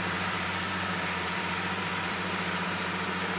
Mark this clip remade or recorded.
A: remade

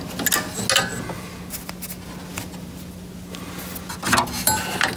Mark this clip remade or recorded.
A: recorded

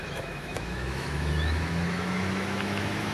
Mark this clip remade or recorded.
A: remade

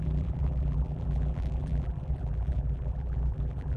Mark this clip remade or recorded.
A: remade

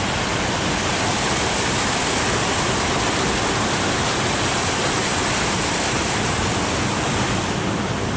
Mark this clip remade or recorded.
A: recorded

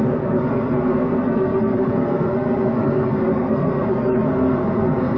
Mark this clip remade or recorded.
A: remade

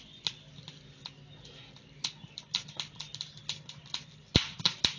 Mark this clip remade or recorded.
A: recorded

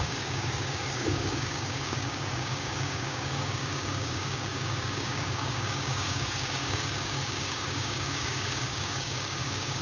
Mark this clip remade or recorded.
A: remade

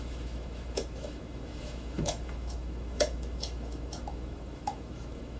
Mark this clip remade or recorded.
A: remade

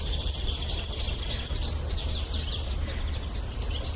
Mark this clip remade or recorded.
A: recorded